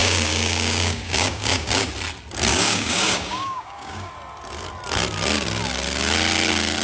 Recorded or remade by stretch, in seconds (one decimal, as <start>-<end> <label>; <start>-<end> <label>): 0.0-1.9 remade; 1.9-2.5 recorded; 2.5-4.1 remade; 4.1-6.8 recorded